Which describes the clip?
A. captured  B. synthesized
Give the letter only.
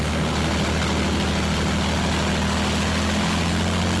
A